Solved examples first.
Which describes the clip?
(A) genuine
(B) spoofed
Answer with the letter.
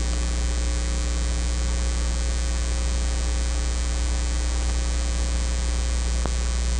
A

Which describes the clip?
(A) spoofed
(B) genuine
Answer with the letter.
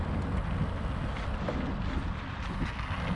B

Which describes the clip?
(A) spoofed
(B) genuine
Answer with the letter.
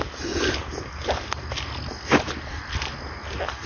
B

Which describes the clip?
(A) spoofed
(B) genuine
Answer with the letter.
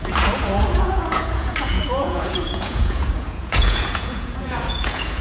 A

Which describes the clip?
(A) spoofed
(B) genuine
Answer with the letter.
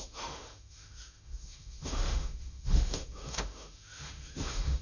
A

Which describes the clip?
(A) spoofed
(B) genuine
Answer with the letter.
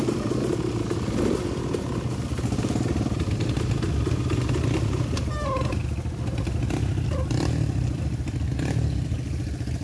B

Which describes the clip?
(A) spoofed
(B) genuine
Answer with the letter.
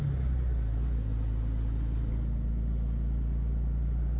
B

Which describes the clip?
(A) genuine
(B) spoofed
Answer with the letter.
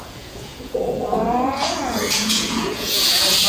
B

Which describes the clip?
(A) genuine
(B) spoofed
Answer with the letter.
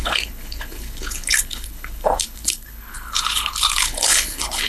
B